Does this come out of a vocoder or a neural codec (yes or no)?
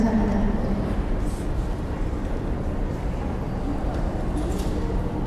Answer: no